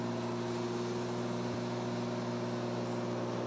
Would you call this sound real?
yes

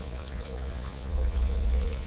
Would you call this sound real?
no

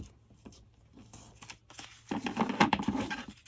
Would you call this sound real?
yes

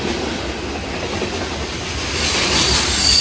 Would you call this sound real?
yes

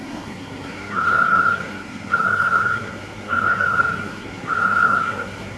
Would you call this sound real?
no